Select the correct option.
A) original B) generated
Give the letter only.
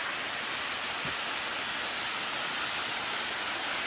A